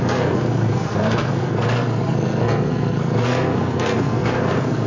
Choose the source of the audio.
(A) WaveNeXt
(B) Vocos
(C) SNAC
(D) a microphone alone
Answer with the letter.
C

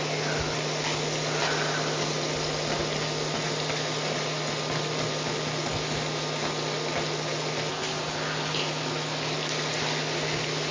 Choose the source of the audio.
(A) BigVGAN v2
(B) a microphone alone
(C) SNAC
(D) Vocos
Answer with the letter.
B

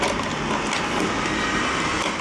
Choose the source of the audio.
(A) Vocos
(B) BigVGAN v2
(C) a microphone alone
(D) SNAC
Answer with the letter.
C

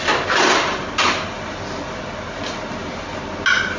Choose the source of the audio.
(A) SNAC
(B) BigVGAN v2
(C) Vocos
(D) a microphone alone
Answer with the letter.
D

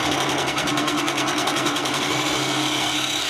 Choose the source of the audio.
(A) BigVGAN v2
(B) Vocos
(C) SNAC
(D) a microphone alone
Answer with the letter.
C